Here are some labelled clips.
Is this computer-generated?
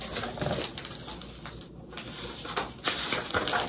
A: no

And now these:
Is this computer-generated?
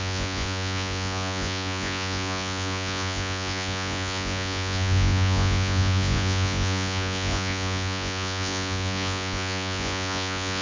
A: yes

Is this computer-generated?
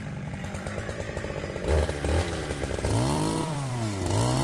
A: yes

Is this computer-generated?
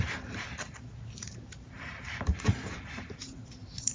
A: yes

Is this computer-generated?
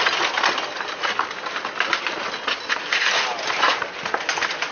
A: no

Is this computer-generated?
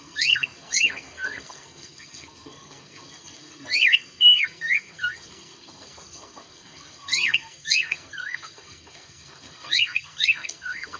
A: yes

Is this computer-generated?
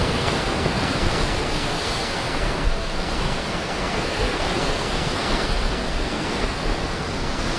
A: yes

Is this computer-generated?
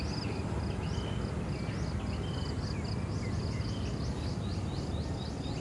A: no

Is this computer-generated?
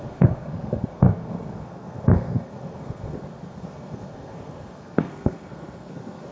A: yes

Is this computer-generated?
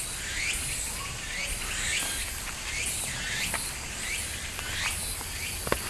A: no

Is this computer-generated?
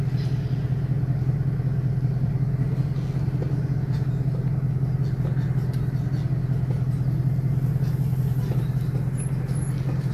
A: no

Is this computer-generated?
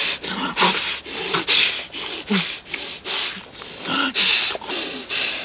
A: no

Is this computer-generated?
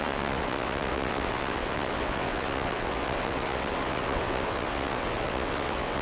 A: yes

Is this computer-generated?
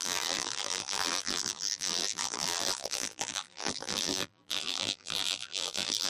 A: yes